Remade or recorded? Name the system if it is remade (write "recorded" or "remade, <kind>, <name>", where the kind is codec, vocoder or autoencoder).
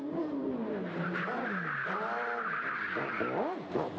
recorded